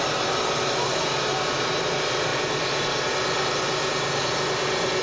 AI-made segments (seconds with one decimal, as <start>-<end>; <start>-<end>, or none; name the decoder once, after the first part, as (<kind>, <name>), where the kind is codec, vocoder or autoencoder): none